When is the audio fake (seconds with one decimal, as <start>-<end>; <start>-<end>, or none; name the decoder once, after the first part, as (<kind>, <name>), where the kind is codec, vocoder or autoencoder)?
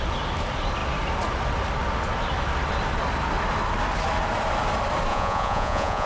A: 5.1-6.1 (vocoder, Vocos)